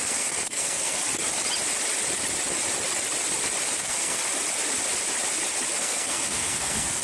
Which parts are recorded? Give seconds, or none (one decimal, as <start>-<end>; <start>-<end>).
1.0-3.8; 4.2-5.7